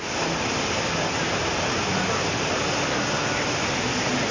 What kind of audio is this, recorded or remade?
recorded